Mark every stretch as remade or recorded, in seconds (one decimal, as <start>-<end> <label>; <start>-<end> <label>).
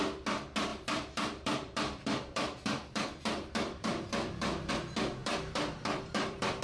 0.0-0.7 recorded; 0.7-4.7 remade; 4.7-5.2 recorded; 5.2-6.6 remade